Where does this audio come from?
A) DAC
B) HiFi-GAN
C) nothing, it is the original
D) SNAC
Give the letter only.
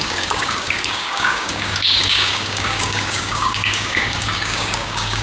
A